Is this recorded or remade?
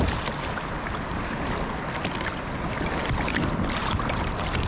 recorded